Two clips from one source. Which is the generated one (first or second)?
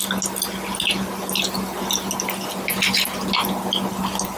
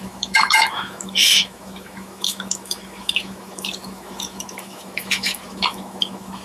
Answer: second